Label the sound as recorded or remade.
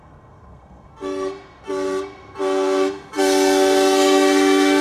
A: remade